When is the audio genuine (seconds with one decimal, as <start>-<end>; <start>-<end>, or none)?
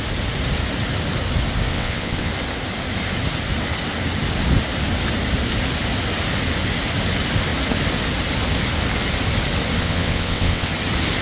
0.0-1.7; 2.3-9.8; 10.7-11.2